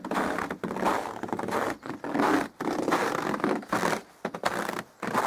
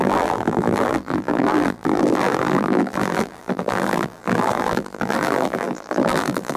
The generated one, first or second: second